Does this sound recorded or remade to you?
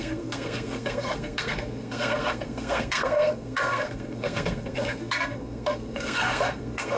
remade